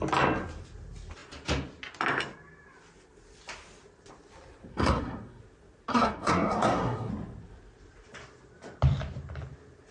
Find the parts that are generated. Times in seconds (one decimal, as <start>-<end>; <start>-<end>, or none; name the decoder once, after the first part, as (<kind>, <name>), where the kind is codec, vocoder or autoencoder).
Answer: 4.7-5.4 (codec, SNAC); 5.9-7.1

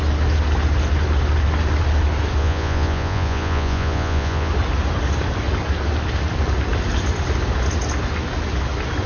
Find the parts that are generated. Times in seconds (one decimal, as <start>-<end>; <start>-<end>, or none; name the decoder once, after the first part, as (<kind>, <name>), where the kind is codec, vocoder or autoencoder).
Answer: 2.4-4.5 (vocoder, Vocos)

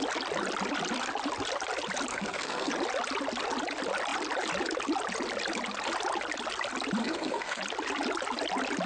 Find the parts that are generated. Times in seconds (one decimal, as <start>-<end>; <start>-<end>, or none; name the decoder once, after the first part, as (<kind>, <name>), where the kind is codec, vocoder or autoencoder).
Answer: 2.1-2.7 (codec, SNAC); 7.0-7.6

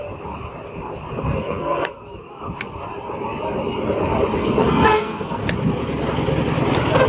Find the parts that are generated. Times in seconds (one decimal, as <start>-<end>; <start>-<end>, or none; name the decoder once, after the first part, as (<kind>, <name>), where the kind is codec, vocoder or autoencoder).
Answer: 1.4-2.4 (codec, SNAC); 4.4-5.4

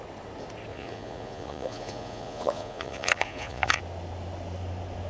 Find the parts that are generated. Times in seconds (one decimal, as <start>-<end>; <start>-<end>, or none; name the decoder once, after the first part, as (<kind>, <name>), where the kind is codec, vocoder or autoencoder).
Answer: 0.7-3.8 (vocoder, Vocos)